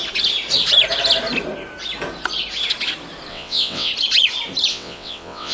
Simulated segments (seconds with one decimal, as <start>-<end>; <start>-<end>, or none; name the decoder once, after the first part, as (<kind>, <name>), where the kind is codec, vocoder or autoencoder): 3.3-3.9 (vocoder, WaveNeXt); 4.7-5.5